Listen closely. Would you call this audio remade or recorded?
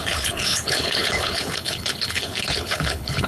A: remade